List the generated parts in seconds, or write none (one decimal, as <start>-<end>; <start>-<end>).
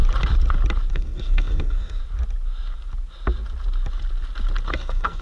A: 0.9-2.0; 4.7-5.2